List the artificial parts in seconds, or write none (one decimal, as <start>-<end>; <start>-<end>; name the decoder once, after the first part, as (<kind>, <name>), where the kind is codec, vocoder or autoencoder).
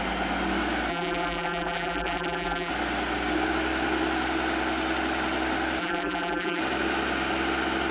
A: 0.9-2.7 (vocoder, BigVGAN v2); 5.8-6.6